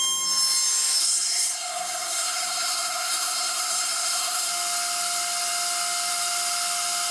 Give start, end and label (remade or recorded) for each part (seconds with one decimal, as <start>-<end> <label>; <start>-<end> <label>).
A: 0.0-1.0 recorded; 1.0-4.5 remade; 4.5-7.1 recorded